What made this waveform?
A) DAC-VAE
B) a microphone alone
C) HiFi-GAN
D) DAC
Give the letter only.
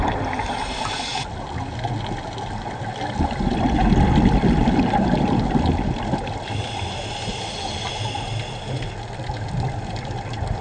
B